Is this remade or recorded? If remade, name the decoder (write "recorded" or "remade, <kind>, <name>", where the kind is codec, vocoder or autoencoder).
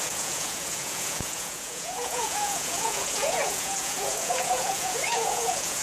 remade, vocoder, Vocos